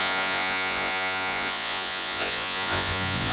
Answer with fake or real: fake